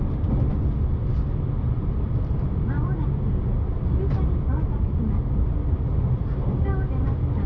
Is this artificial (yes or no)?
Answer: no